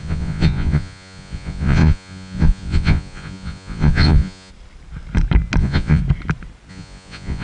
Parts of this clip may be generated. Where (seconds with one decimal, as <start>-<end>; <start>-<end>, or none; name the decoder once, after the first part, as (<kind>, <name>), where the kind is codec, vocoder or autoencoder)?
0.0-4.5 (vocoder, Vocos); 5.6-6.0; 6.7-7.4